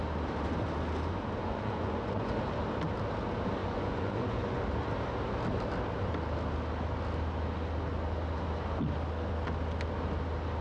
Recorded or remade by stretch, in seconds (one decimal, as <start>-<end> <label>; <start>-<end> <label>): 0.0-1.4 recorded; 1.4-2.3 remade; 2.3-3.6 recorded; 3.6-4.6 remade; 4.6-10.6 recorded